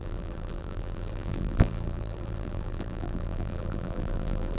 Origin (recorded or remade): remade